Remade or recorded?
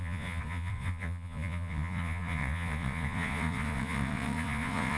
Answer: remade